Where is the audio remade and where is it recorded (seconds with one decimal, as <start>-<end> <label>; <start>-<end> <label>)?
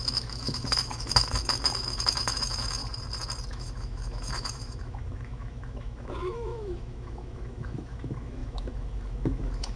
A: 0.0-2.8 remade; 2.8-3.5 recorded; 3.5-9.8 remade